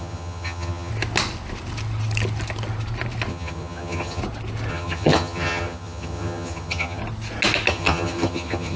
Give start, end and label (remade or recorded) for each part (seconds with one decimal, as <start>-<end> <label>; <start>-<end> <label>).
0.0-0.9 remade; 0.9-3.3 recorded; 3.3-4.2 remade; 4.2-4.7 recorded; 4.7-7.0 remade; 7.0-7.7 recorded; 7.7-8.8 remade